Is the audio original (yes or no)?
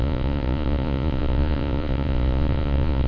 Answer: no